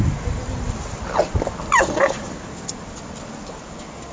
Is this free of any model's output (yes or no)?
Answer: yes